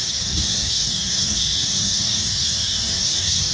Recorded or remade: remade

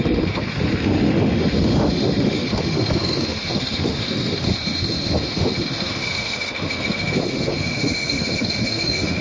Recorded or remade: remade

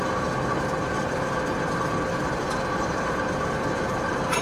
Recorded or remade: remade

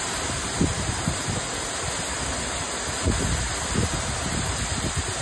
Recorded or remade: recorded